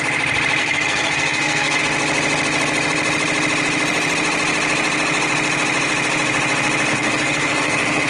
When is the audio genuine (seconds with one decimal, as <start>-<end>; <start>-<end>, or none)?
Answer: 0.0-0.6; 1.8-6.9